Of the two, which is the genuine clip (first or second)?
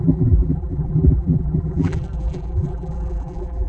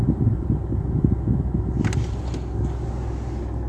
second